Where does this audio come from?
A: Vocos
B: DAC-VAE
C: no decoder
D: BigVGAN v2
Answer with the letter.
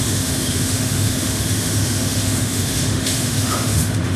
B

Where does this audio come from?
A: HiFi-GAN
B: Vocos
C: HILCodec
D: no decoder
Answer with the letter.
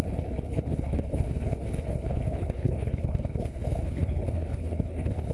C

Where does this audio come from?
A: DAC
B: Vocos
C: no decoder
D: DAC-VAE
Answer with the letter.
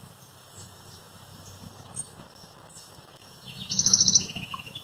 D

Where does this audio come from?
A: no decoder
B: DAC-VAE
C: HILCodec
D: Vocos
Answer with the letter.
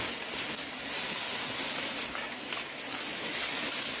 A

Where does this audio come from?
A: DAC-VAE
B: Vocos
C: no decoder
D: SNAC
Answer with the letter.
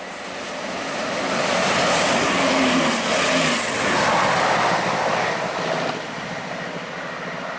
C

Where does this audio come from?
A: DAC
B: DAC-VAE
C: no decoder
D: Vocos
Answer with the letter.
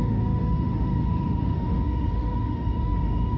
B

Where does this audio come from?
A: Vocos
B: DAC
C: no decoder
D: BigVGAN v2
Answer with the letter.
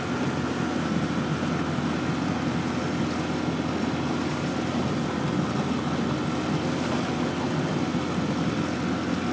C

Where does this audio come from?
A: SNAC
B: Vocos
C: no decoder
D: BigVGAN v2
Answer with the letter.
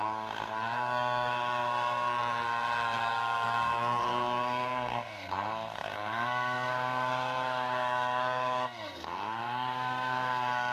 A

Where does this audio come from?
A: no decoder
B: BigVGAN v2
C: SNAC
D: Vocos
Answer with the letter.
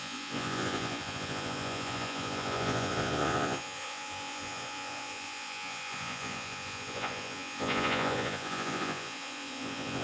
D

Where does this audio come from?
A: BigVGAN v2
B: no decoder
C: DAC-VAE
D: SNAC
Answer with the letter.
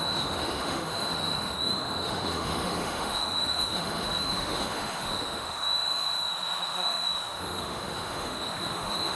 C